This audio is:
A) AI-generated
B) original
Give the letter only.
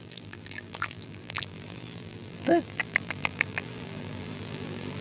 A